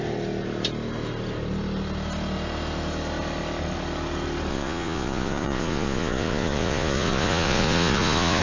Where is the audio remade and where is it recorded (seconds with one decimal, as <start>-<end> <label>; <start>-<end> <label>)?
0.0-4.5 recorded; 4.5-8.4 remade